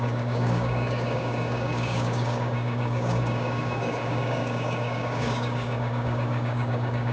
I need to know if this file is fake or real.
fake